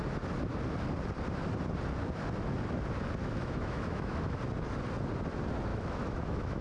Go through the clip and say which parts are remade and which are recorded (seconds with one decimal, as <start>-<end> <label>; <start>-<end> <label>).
0.0-3.2 recorded; 3.2-4.4 remade; 4.4-5.7 recorded; 5.7-6.6 remade